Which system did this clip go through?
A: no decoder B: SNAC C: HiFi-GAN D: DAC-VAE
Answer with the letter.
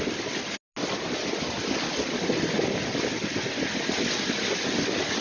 A